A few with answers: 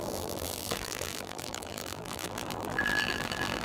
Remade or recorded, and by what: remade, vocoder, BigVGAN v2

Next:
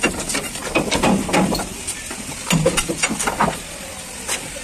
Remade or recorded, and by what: recorded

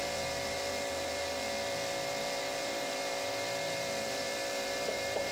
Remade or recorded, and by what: remade, vocoder, BigVGAN v2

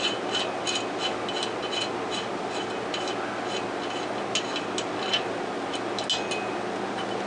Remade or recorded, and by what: recorded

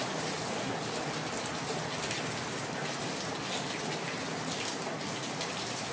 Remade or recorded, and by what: recorded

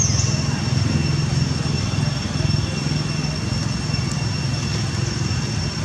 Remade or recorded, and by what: recorded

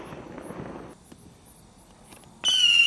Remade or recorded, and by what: recorded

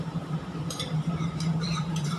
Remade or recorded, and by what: remade, vocoder, BigVGAN v2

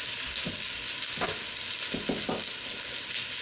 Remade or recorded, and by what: remade, vocoder, BigVGAN v2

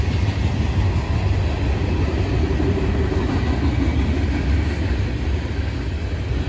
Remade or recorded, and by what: recorded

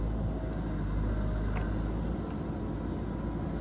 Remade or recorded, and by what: recorded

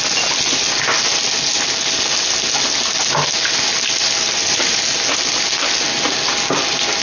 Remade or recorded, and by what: recorded